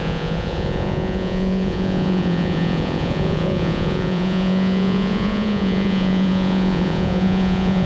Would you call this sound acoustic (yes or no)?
no